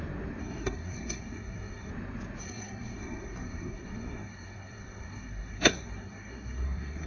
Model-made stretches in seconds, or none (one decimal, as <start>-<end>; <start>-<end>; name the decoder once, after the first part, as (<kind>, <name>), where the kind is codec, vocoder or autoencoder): 0.4-1.9 (codec, SNAC); 2.4-7.1